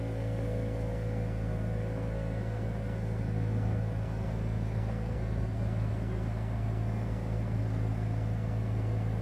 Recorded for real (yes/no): no